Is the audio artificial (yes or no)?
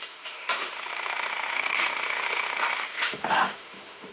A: yes